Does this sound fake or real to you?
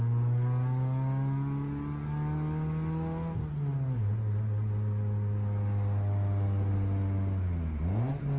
real